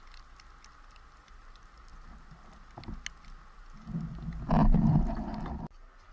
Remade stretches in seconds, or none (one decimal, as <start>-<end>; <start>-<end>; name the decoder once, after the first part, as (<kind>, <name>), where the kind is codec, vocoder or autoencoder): none